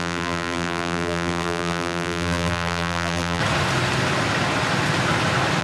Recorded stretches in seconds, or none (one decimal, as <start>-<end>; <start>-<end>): 3.4-5.6